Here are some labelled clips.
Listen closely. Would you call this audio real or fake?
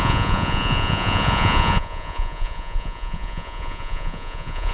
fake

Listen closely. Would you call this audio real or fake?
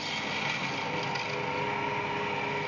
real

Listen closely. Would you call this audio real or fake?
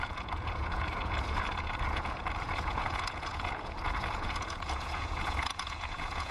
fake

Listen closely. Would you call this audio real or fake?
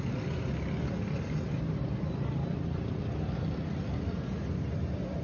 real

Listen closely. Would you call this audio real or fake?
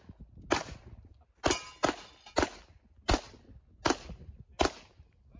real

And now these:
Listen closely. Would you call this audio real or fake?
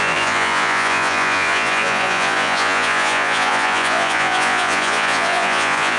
fake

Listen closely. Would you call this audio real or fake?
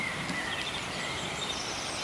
real